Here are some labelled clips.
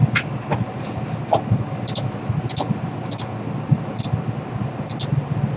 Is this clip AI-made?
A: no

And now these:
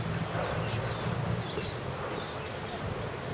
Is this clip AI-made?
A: no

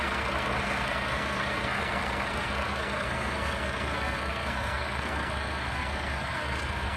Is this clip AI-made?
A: yes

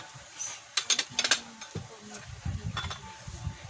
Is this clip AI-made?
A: no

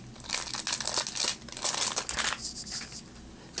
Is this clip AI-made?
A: no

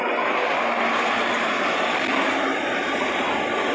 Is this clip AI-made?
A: no